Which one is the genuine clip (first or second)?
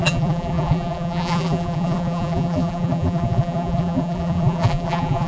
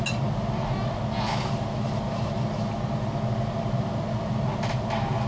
second